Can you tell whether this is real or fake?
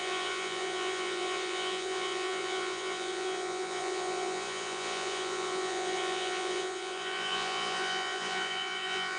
fake